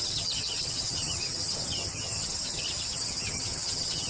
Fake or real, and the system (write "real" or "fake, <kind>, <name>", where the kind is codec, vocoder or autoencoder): fake, vocoder, HiFi-GAN